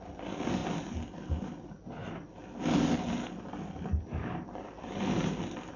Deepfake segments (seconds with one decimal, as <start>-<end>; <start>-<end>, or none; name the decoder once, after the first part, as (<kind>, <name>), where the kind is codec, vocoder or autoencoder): none